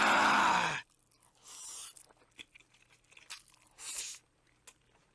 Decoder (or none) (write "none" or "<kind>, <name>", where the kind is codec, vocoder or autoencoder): none